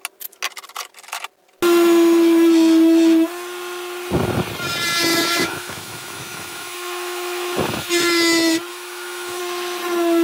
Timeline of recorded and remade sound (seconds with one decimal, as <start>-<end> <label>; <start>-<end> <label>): 0.0-5.1 recorded; 5.1-7.9 remade; 7.9-8.7 recorded; 8.7-9.4 remade; 9.4-10.2 recorded